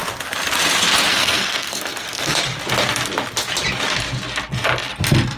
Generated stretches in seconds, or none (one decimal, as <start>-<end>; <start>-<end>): 1.1-2.4